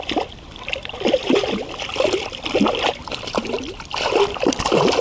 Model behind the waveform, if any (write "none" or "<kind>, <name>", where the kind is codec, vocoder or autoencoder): vocoder, BigVGAN v2